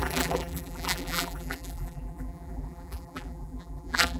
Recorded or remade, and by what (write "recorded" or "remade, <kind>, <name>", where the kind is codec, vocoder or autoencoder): remade, vocoder, BigVGAN v2